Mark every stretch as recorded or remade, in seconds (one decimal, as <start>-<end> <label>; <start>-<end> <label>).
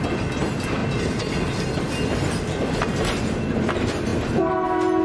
0.0-5.0 recorded